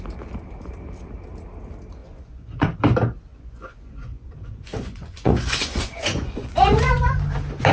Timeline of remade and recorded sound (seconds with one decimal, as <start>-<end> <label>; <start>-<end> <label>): 0.0-2.0 recorded; 2.0-2.7 remade; 2.7-3.3 recorded; 3.3-7.1 remade; 7.1-7.7 recorded

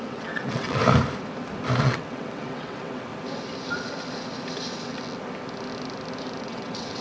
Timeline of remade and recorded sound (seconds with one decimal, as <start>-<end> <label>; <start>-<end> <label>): 0.0-0.8 remade; 0.8-1.8 recorded; 1.8-3.1 remade; 3.1-6.4 recorded; 6.4-7.0 remade

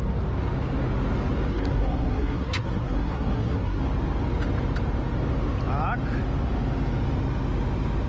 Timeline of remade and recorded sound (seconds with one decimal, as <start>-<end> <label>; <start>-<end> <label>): 0.0-1.5 recorded; 1.5-3.8 remade; 3.8-8.1 recorded

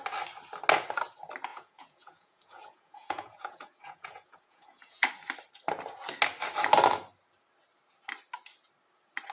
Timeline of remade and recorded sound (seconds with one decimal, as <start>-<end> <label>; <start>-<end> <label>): 0.0-1.5 recorded; 1.5-5.1 remade; 5.1-9.3 recorded

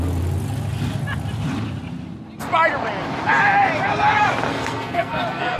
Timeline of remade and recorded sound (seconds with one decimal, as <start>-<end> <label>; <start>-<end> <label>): 0.0-4.5 recorded; 4.5-5.6 remade

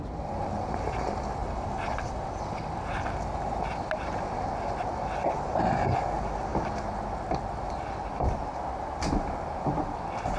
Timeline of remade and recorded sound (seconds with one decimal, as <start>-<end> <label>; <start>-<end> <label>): 0.0-1.4 recorded; 1.4-2.9 remade; 2.9-8.5 recorded; 8.5-9.0 remade; 9.0-10.4 recorded

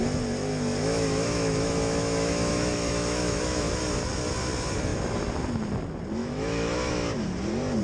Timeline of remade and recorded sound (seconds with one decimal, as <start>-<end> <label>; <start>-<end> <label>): 0.0-0.8 recorded; 0.8-3.8 remade; 3.8-6.2 recorded; 6.2-6.9 remade; 6.9-7.8 recorded